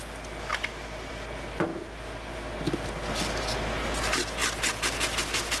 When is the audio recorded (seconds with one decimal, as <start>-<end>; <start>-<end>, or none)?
0.0-5.6